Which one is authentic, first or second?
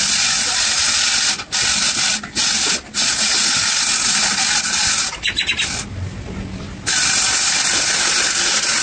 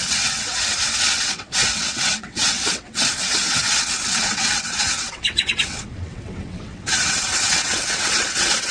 first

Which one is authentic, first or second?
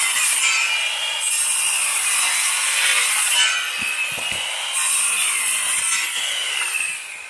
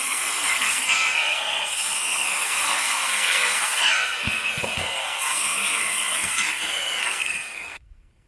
first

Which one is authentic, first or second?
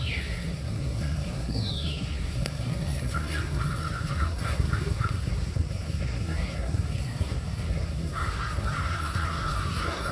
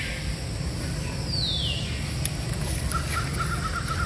second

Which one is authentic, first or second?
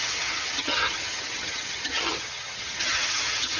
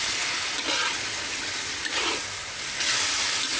second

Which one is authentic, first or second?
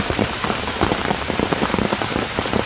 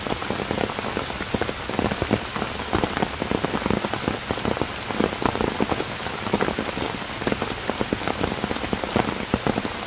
second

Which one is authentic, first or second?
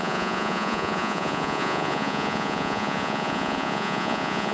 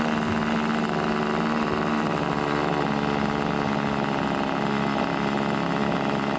second